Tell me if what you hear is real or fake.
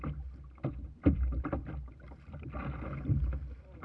real